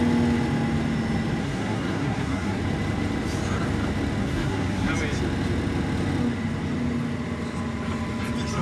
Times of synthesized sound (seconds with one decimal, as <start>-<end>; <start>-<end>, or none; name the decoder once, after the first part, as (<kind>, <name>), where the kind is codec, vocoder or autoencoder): 1.4-2.6 (codec, SNAC); 4.2-4.9